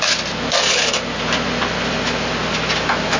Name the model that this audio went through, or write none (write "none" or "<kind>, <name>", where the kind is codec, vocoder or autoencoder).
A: none